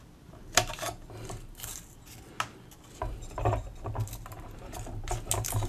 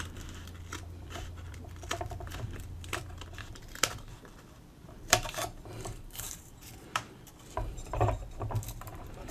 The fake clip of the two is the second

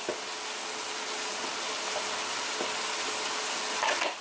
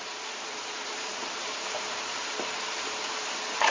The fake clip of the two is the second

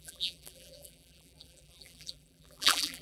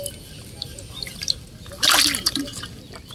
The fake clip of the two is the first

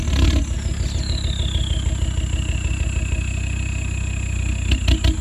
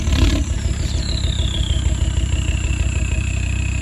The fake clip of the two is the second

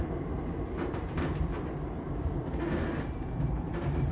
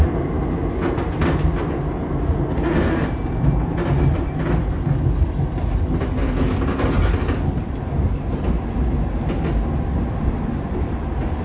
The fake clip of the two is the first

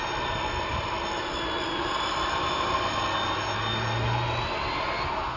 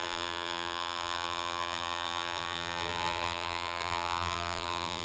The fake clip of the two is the second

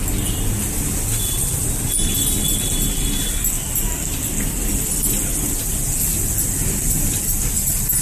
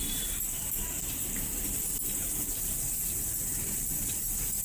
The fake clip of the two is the second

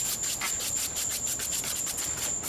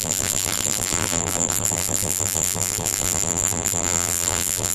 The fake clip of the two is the second